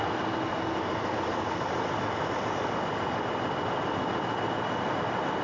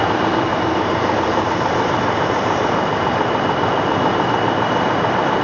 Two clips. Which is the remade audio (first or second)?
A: second